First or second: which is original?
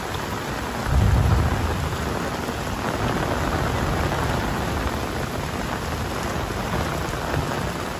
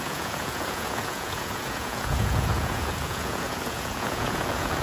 first